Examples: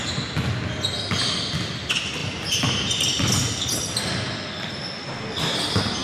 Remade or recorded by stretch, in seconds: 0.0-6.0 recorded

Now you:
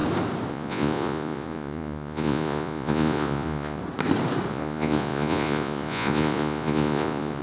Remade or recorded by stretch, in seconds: 0.0-0.5 recorded; 0.5-3.8 remade; 3.8-4.5 recorded; 4.5-7.4 remade

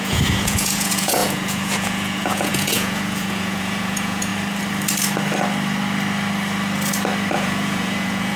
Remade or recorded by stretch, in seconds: 0.0-4.3 remade; 4.3-7.3 recorded; 7.3-8.4 remade